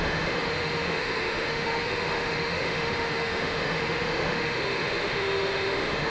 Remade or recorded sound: remade